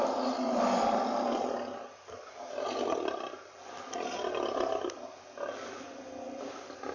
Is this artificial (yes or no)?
no